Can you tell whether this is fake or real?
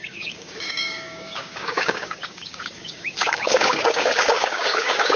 fake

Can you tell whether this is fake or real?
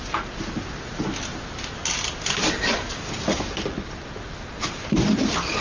real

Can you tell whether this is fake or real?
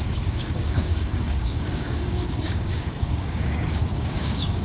fake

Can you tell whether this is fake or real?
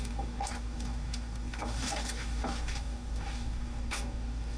fake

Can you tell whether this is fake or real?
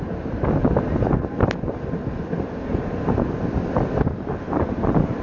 real